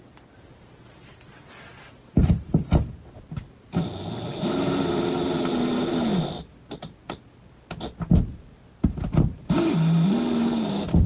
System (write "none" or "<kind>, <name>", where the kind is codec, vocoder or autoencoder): none